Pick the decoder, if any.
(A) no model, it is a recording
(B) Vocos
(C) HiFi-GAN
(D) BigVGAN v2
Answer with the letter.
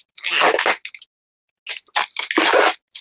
A